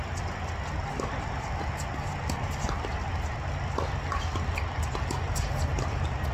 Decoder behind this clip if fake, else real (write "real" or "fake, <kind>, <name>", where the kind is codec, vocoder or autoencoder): real